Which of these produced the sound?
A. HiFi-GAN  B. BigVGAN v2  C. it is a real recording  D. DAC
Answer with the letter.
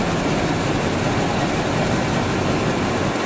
C